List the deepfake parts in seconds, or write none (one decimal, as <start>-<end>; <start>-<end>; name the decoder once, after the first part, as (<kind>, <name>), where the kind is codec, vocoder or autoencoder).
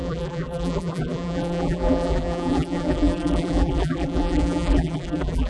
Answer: 0.0-5.5 (vocoder, BigVGAN v2)